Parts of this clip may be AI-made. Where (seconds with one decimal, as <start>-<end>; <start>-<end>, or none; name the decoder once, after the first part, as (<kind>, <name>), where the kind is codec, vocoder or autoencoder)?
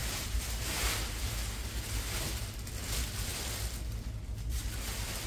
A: 0.0-1.5 (vocoder, BigVGAN v2)